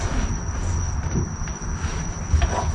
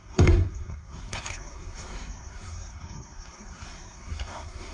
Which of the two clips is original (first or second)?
first